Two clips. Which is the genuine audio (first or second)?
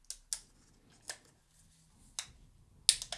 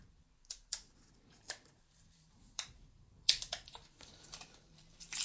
first